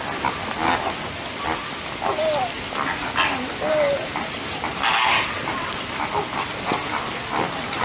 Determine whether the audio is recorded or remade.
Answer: recorded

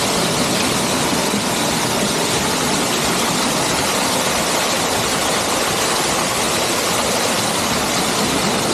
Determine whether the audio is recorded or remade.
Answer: recorded